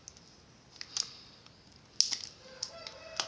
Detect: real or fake real